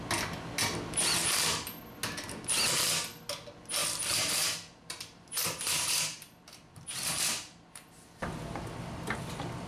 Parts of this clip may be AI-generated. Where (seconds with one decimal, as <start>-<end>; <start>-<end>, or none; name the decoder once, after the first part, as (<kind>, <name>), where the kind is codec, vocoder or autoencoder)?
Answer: 1.2-1.8 (vocoder, BigVGAN v2); 3.8-8.2